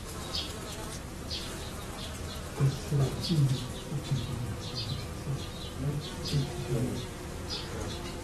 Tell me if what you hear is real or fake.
real